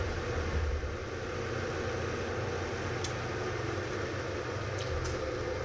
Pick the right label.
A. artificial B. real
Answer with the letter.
B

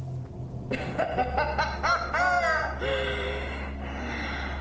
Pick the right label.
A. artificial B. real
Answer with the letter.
B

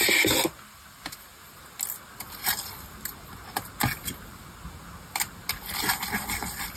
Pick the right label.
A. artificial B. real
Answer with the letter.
B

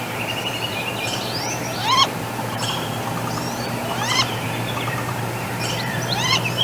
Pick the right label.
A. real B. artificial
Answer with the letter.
B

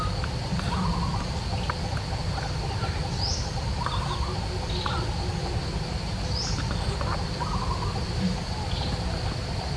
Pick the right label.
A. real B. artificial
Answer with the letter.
A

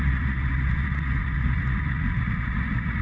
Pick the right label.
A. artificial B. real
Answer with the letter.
A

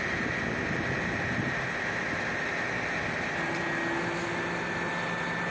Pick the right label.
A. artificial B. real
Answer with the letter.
B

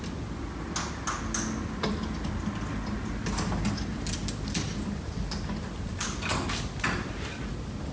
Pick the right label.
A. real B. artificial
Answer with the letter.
A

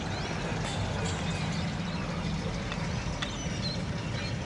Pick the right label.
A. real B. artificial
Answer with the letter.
A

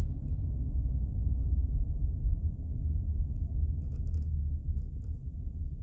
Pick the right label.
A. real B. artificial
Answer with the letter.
B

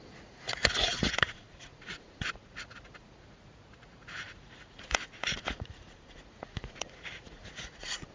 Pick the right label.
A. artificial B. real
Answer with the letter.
A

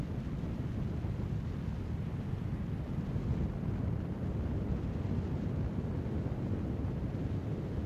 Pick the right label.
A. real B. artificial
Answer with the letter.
A